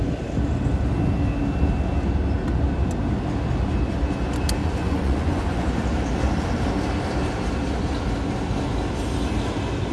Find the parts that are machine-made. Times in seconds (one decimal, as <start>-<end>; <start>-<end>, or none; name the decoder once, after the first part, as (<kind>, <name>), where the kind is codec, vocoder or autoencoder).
4.6-5.7 (vocoder, Vocos)